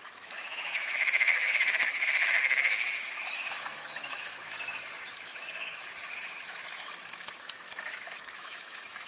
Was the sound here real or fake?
fake